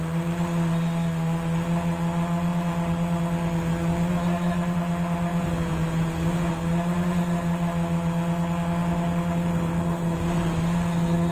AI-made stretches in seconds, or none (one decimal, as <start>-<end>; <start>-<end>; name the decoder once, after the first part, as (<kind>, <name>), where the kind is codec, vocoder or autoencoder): 5.3-6.5 (vocoder, Vocos)